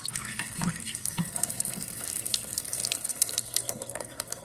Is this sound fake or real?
fake